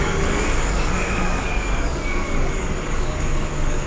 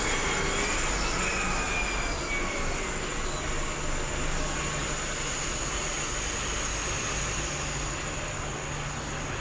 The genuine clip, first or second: second